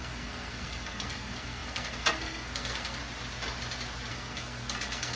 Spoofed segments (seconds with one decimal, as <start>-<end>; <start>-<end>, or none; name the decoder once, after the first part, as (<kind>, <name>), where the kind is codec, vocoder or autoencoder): 0.0-3.0 (codec, SNAC); 4.1-5.2